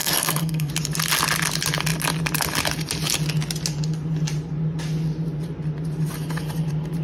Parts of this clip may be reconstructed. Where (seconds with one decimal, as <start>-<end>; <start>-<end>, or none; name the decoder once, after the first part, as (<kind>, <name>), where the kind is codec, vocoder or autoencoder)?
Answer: 0.0-0.7 (codec, SNAC)